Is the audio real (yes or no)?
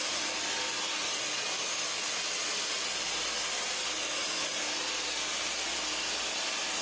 yes